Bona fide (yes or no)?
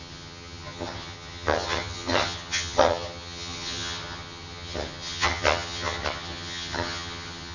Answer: no